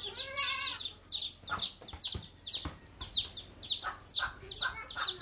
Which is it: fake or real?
real